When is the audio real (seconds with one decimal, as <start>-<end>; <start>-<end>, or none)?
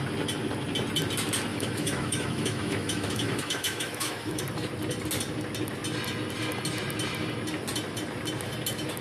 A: 0.0-1.5; 4.4-9.0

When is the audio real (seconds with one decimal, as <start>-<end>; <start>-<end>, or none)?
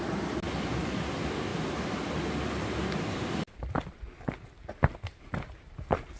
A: 0.0-6.2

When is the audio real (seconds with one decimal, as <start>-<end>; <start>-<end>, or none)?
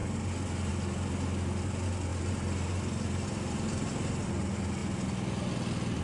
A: 0.0-2.1; 4.3-6.0